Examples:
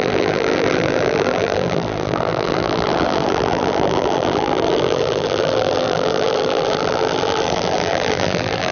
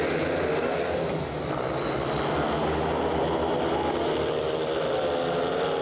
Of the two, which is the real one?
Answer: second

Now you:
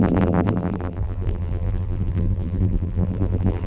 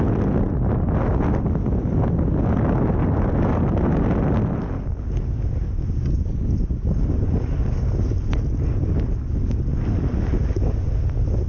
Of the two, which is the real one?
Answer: second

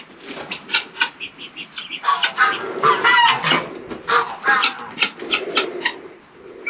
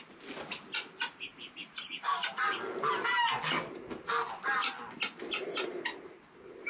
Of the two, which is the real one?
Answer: second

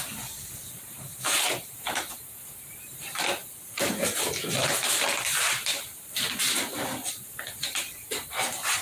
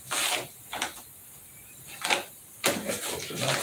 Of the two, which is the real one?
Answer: second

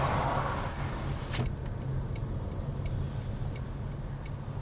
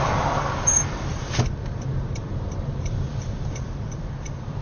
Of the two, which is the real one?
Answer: first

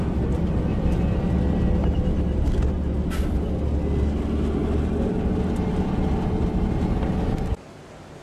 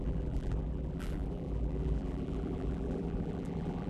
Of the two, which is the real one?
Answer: first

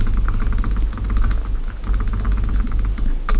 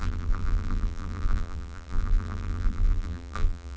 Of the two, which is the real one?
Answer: first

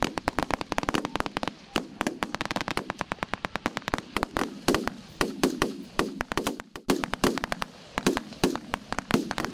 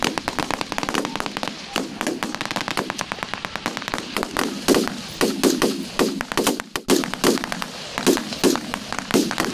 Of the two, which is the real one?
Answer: second